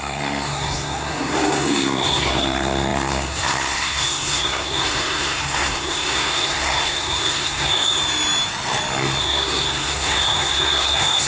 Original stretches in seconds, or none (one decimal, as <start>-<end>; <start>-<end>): 8.0-9.2